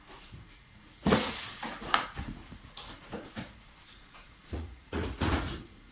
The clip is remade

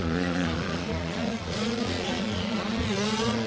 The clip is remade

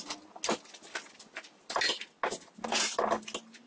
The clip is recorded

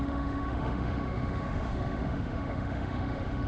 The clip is remade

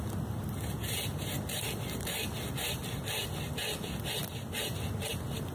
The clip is recorded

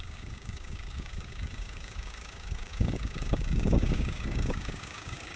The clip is remade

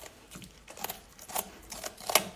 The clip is recorded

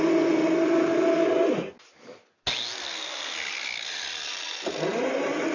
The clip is recorded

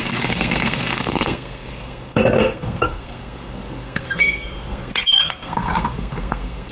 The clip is remade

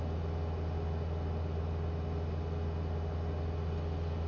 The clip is recorded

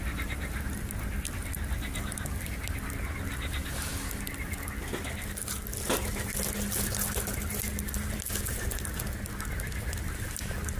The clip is recorded